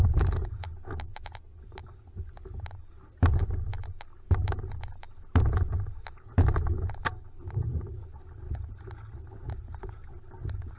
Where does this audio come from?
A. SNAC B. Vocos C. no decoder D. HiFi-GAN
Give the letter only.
C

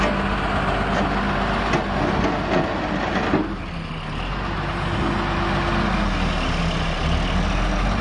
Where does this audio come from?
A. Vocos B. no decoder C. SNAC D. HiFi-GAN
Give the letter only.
B